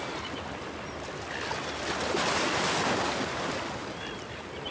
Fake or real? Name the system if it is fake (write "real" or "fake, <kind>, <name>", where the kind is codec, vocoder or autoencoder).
real